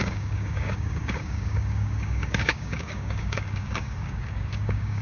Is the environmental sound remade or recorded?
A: remade